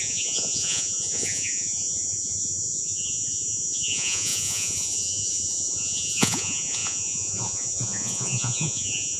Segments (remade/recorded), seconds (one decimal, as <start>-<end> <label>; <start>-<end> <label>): 0.0-9.2 remade